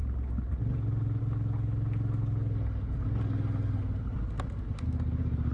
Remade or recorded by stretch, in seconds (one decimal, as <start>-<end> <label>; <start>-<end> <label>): 0.0-5.5 recorded